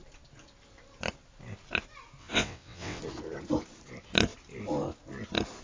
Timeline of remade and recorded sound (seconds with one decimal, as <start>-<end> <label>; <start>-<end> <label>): 0.0-2.2 recorded; 2.2-3.0 remade; 3.0-5.6 recorded